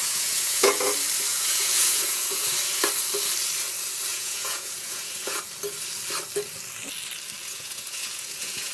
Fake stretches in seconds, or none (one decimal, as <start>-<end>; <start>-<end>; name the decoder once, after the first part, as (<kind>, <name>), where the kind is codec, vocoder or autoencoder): 0.0-0.7 (vocoder, Vocos); 1.3-2.5; 4.1-5.4; 7.4-8.7